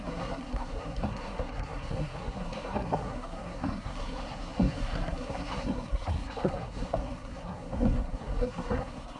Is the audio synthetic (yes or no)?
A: yes